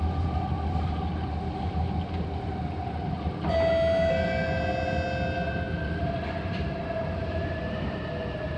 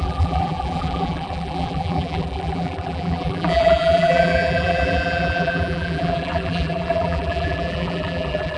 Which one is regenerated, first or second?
second